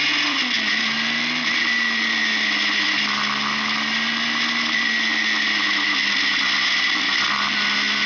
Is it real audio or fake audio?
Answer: real